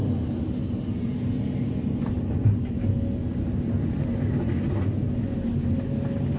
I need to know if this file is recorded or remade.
recorded